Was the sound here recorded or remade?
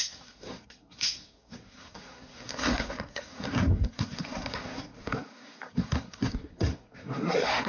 remade